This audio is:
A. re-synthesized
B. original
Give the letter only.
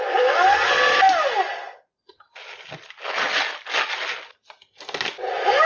B